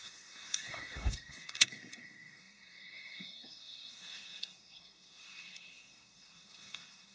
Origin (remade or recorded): remade